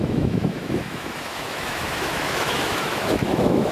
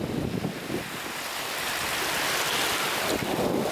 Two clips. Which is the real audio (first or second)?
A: second